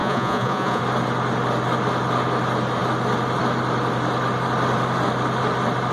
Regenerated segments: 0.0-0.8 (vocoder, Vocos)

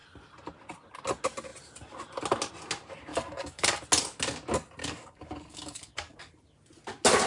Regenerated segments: 3.1-3.8 (codec, DAC); 4.8-6.3